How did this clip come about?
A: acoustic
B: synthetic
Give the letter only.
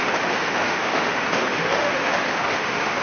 B